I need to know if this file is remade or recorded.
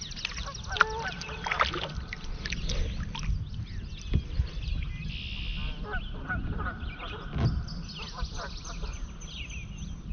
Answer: recorded